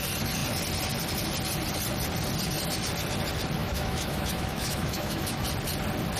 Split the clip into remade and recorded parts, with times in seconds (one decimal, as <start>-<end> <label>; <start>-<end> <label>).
0.0-3.6 recorded; 3.6-5.4 remade; 5.4-6.2 recorded